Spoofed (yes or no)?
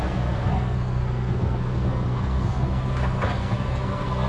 yes